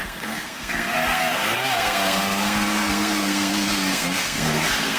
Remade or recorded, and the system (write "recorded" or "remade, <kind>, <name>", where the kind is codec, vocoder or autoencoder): remade, codec, SNAC